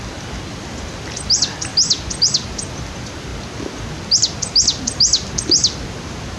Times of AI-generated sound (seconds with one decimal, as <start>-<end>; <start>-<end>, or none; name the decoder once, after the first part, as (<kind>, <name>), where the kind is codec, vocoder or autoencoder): none